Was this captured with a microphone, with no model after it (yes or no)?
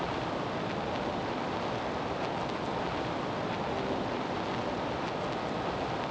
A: yes